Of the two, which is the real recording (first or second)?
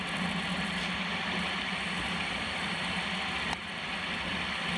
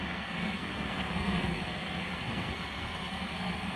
first